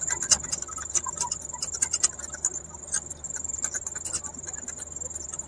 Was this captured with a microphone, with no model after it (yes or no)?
yes